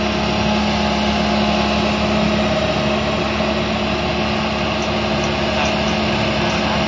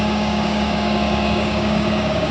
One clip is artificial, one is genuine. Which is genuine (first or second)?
first